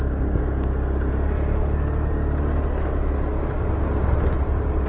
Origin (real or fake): real